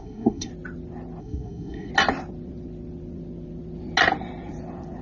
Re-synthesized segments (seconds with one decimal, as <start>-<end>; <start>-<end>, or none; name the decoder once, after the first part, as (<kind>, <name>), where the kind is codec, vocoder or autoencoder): 0.0-0.5 (codec, SNAC); 1.2-1.9